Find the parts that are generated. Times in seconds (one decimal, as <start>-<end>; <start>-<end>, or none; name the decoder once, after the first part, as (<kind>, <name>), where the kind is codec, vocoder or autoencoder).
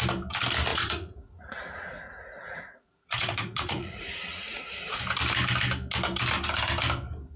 0.7-5.0 (vocoder, Vocos)